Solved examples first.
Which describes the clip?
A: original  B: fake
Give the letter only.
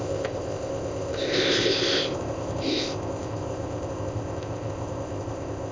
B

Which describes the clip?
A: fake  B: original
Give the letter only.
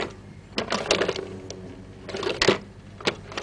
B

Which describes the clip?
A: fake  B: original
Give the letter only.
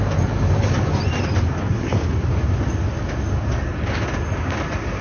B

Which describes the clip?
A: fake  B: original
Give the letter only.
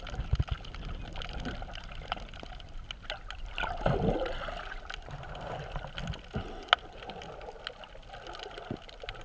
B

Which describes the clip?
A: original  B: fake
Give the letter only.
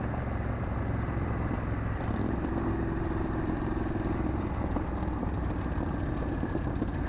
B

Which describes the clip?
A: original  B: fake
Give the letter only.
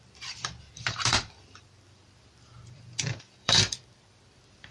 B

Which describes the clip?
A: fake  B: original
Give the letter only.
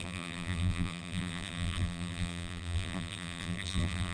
A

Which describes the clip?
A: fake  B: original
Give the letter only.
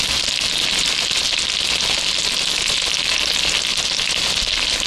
B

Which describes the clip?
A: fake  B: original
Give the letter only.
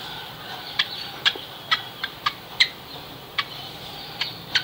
A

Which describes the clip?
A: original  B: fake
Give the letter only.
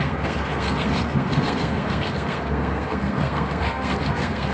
B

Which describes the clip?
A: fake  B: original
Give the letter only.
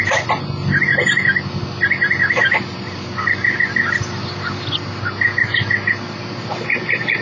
B